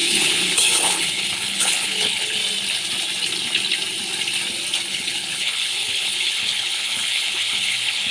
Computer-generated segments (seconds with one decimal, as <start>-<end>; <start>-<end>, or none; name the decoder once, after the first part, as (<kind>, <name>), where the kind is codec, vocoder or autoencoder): 0.0-2.4 (codec, HILCodec); 4.9-8.1